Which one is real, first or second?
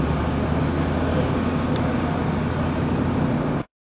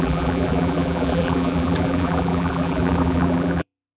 first